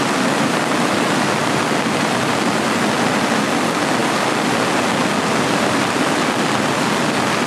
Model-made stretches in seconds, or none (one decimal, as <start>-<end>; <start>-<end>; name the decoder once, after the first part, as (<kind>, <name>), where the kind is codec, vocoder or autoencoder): none